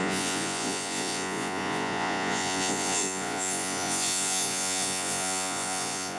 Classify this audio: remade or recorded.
remade